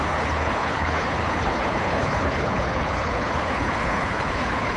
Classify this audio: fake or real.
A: fake